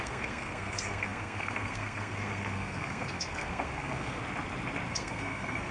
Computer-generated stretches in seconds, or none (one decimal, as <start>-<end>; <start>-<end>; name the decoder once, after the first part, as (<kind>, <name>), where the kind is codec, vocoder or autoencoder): 0.0-4.2 (codec, SNAC); 4.9-5.7